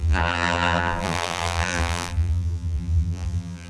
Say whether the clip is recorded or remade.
remade